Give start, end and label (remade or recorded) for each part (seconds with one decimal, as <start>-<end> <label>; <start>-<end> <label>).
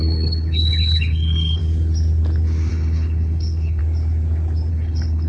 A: 0.0-1.6 remade; 1.6-2.7 recorded; 2.7-3.8 remade; 3.8-4.7 recorded; 4.7-5.3 remade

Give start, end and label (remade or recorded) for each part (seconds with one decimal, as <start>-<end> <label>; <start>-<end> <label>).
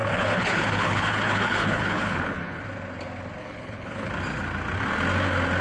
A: 0.0-2.6 remade; 2.6-3.4 recorded; 3.4-4.1 remade; 4.1-5.6 recorded